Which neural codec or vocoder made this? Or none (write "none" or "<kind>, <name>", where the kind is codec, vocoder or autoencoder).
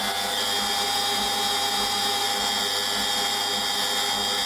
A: none